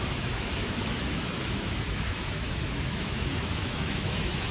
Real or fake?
fake